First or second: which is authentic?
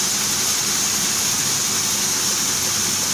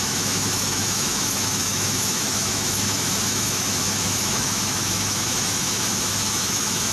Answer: first